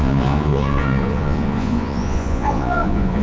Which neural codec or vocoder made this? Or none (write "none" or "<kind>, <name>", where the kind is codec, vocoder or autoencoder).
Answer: vocoder, Vocos